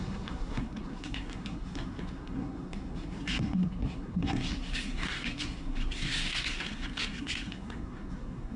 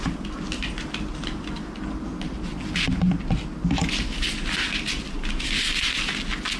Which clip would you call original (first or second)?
second